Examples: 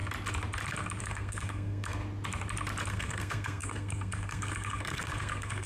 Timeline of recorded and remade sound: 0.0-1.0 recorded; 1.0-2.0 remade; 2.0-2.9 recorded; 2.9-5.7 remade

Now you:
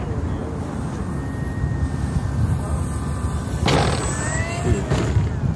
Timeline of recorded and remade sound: 0.0-5.6 recorded

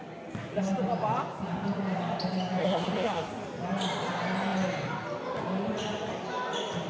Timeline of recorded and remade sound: 0.0-2.6 recorded; 2.6-3.3 remade; 3.3-6.9 recorded

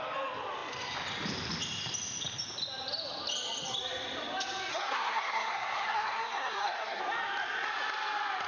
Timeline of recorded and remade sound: 0.0-4.7 recorded; 4.7-7.0 remade; 7.0-8.5 recorded